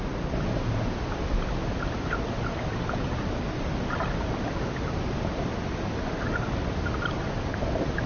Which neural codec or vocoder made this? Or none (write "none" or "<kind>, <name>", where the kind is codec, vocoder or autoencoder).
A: none